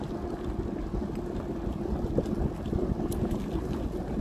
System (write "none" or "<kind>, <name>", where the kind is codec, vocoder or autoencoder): none